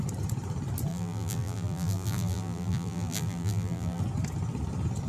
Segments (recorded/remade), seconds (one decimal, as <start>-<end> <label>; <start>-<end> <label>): 0.0-0.9 recorded; 0.9-4.0 remade; 4.0-5.1 recorded